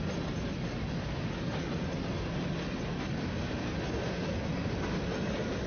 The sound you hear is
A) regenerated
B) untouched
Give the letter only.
B